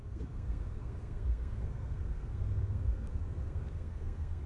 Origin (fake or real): fake